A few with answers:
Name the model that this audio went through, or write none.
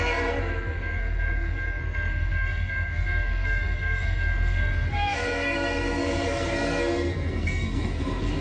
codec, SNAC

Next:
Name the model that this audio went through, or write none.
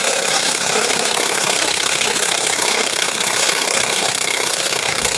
codec, SNAC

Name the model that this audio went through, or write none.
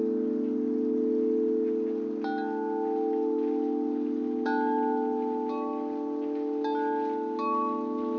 none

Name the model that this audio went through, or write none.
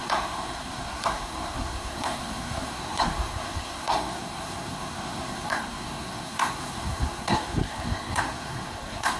codec, SNAC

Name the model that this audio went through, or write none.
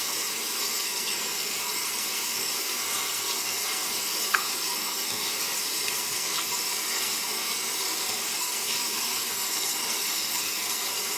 codec, SNAC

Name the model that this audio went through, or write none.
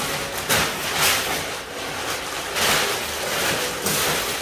none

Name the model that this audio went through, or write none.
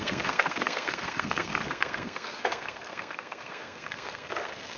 codec, SNAC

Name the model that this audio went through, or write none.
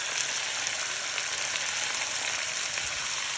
none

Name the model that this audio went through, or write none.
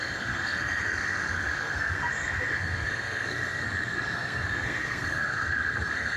codec, SNAC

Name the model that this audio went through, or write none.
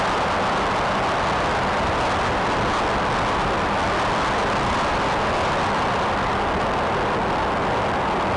none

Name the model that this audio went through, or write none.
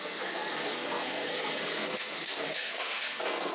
codec, SNAC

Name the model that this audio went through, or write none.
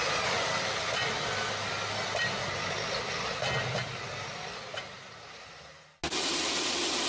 none